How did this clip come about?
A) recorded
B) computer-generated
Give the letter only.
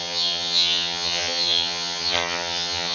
B